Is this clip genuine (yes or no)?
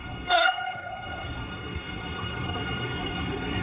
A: no